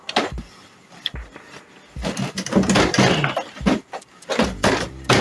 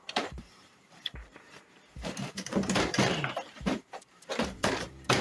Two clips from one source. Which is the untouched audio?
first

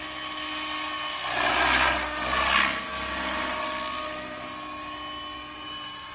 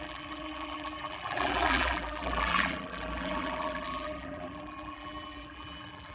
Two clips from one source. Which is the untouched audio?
first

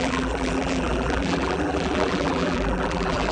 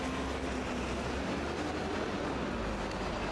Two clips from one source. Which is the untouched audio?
second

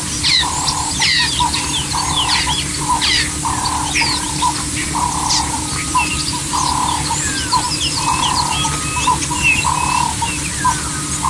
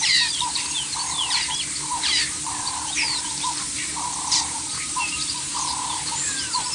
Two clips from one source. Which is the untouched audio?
first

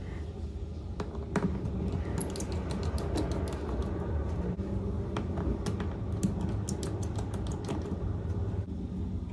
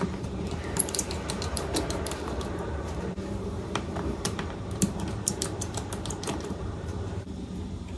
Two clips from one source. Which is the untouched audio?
first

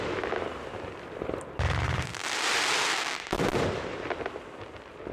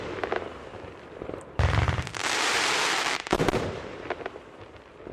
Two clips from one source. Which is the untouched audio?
first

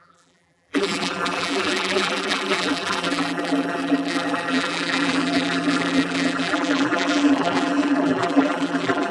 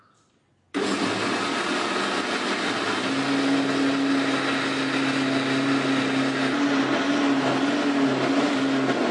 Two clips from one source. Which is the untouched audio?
second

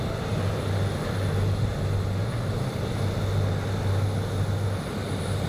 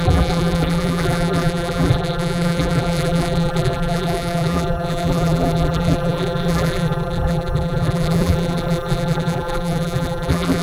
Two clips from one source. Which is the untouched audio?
first